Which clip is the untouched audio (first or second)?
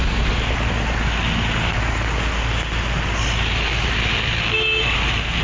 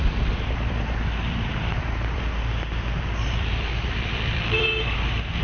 first